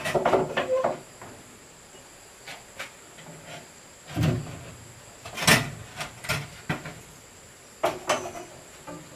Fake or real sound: real